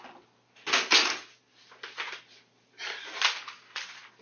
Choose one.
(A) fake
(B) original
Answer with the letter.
B